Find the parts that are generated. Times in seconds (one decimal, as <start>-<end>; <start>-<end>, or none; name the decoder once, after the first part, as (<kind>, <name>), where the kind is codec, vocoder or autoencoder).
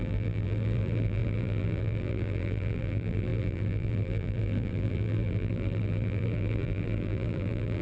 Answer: 0.0-7.8 (vocoder, BigVGAN v2)